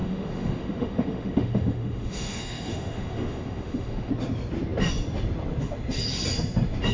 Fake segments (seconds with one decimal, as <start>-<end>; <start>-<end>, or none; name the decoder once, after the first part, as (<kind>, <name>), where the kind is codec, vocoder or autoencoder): 0.0-4.1 (autoencoder, DAC-VAE)